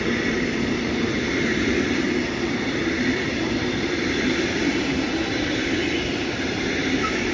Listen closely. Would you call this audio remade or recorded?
remade